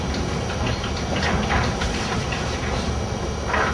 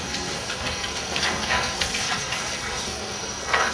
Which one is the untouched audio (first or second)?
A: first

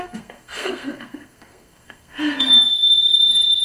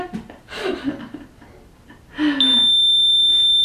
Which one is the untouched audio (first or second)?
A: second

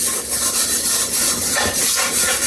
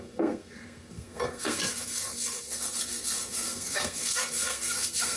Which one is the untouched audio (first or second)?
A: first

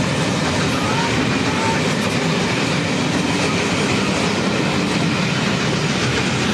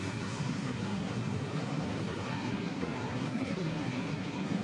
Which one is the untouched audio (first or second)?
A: first